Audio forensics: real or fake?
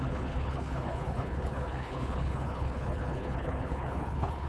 fake